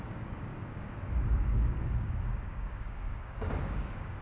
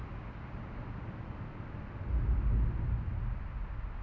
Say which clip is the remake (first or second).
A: first